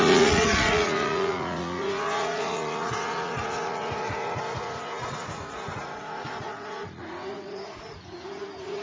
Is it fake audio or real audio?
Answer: fake